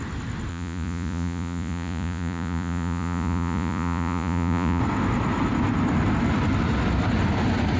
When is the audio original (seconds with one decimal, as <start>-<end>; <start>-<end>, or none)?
0.0-0.5; 4.8-7.8